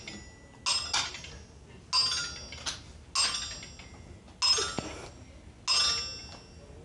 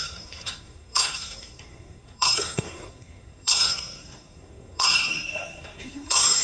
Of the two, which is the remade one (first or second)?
second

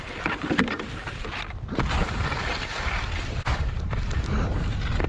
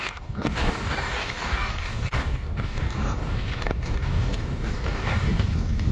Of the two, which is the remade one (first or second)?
second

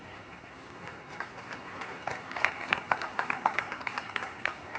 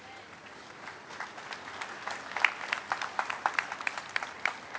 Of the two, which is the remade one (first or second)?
first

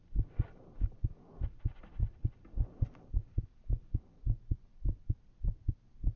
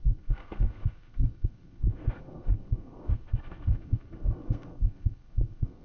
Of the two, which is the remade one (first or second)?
second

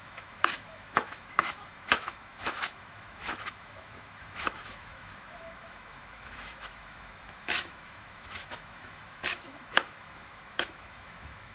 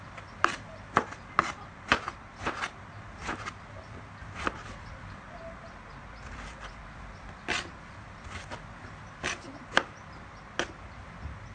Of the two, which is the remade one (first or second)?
first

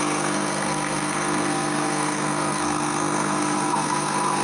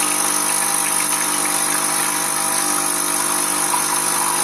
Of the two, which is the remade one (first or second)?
first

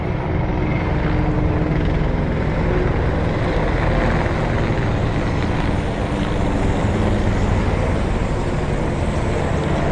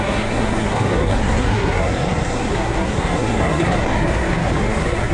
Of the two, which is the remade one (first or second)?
second